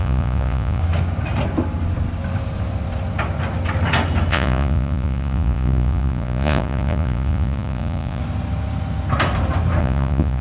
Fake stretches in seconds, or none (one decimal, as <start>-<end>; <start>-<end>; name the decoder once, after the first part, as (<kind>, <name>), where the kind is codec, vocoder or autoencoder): 0.0-0.8 (vocoder, Vocos); 4.3-8.2; 9.8-10.4